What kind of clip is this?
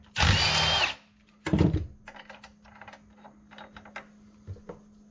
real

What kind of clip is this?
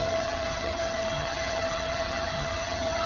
fake